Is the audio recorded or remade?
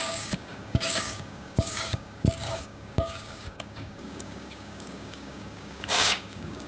remade